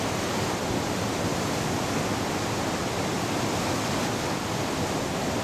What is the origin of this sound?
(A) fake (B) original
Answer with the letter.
B